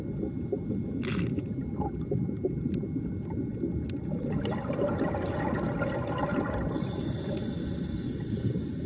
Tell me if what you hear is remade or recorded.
recorded